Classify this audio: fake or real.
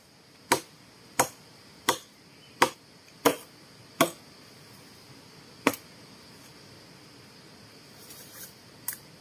real